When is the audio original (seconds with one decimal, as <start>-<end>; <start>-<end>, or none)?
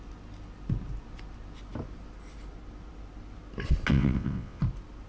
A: 0.0-3.9; 4.6-5.1